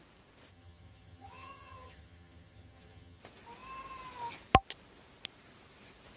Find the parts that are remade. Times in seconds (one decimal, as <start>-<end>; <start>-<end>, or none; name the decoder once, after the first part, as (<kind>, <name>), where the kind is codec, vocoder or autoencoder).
0.5-3.2 (vocoder, HiFi-GAN)

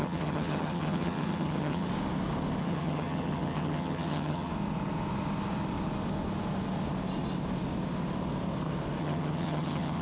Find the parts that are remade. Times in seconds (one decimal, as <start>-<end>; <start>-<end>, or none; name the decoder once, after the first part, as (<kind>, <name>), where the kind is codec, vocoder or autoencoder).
0.0-1.9 (vocoder, HiFi-GAN); 2.6-4.5; 9.0-10.0

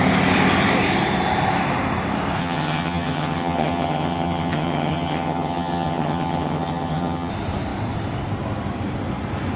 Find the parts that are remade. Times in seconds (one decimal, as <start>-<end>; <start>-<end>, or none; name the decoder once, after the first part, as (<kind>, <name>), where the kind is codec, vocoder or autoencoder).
2.4-7.3 (vocoder, HiFi-GAN)

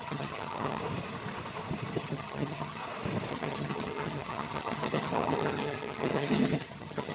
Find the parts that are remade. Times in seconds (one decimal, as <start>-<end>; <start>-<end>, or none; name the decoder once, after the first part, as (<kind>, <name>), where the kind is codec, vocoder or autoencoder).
0.0-0.8 (vocoder, HiFi-GAN); 1.9-2.8; 3.3-7.1

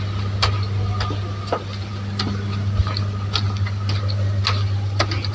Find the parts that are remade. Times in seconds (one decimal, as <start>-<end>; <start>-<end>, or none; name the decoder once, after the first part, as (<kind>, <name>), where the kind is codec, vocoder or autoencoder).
none

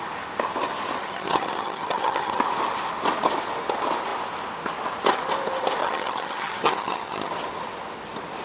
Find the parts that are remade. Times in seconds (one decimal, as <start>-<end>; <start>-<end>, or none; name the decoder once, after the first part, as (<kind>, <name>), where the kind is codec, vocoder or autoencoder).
1.0-2.4 (vocoder, HiFi-GAN); 5.8-7.3